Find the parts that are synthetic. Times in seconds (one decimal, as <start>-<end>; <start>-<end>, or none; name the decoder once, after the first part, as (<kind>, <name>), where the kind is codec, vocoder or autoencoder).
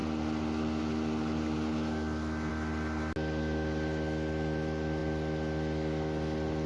none